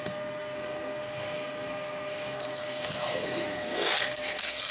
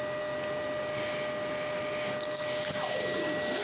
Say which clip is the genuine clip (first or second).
second